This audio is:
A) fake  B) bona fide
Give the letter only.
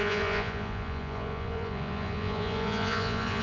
A